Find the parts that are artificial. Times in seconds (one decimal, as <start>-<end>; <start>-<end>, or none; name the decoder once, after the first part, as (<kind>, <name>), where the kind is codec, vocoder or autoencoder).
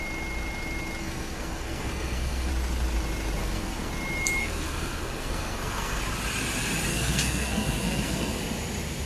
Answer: 1.0-2.5 (codec, SNAC); 3.4-3.9; 4.4-6.0; 6.9-8.4